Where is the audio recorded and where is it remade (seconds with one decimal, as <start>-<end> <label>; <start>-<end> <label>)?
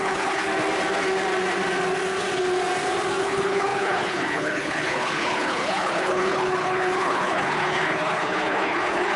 0.0-0.5 remade; 0.5-3.2 recorded; 3.2-9.2 remade